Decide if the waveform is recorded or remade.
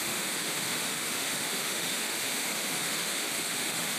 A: remade